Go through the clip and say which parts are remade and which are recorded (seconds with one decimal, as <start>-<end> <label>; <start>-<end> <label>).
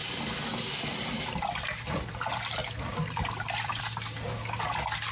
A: 0.0-2.6 recorded; 2.6-3.8 remade; 3.8-5.1 recorded